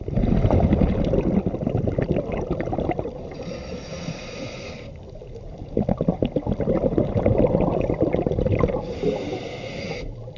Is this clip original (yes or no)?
yes